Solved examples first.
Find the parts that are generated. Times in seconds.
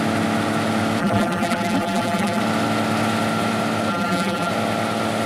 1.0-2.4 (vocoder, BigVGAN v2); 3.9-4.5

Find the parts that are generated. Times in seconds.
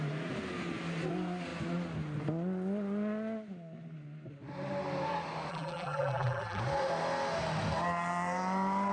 5.5-6.6 (vocoder, BigVGAN v2)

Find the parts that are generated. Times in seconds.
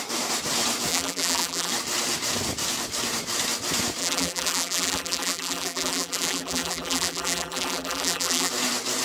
0.9-1.7 (vocoder, BigVGAN v2); 4.0-8.5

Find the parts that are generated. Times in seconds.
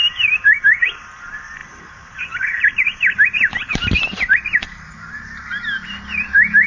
0.0-6.7 (vocoder, BigVGAN v2)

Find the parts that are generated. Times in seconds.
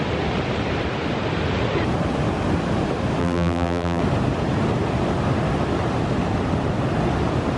3.2-4.0 (vocoder, BigVGAN v2)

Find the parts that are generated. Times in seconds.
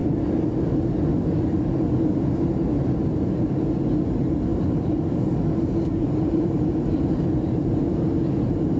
4.5-5.3 (vocoder, BigVGAN v2); 6.0-8.2